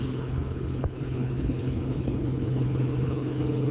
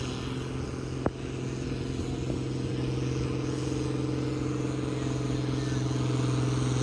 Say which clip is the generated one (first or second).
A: first